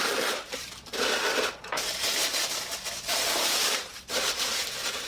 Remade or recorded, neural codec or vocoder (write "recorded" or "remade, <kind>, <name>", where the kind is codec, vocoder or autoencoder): remade, vocoder, BigVGAN v2